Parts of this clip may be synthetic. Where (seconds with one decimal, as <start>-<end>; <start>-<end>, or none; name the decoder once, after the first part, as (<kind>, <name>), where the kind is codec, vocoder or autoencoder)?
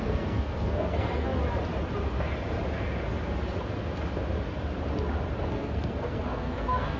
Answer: 0.0-1.3 (codec, SNAC); 5.5-7.0